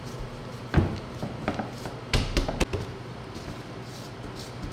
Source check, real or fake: real